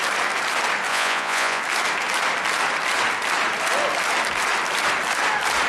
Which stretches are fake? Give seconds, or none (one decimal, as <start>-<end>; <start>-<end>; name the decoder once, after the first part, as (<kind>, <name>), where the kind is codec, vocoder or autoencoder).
0.9-1.6 (vocoder, Vocos)